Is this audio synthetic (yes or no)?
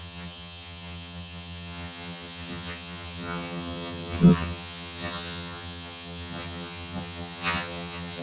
yes